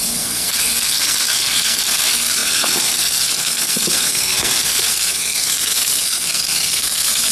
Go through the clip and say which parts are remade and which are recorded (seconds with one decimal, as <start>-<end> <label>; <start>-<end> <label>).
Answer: 0.0-7.3 remade

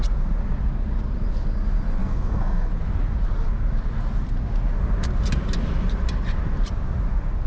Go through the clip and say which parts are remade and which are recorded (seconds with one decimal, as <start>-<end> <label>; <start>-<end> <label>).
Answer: 0.0-2.0 recorded; 2.0-2.7 remade; 2.7-7.5 recorded

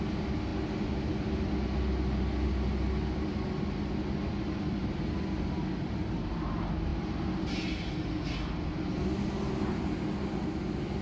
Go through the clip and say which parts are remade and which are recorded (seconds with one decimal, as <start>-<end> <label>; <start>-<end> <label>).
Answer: 0.0-11.0 recorded

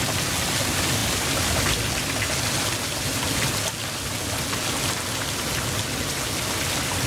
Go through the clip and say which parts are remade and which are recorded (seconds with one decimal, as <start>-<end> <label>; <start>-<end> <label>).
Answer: 0.0-7.1 recorded

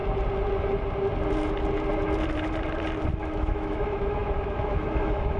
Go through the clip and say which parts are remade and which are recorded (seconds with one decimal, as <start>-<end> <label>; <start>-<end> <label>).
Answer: 0.0-3.2 recorded; 3.2-5.4 remade

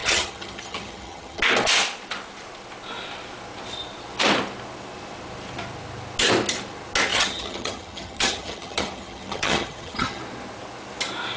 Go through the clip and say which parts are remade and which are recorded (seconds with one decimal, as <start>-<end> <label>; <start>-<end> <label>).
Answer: 0.0-1.4 remade; 1.4-7.1 recorded; 7.1-10.2 remade; 10.2-11.4 recorded

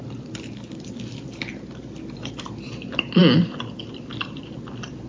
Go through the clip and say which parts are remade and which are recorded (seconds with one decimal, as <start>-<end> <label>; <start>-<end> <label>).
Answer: 0.0-5.1 recorded

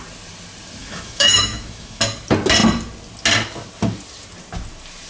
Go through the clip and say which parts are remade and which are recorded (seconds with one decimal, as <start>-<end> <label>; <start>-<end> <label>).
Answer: 0.0-0.8 recorded; 0.8-2.0 remade; 2.0-5.1 recorded